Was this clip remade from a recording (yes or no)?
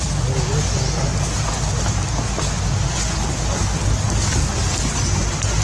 no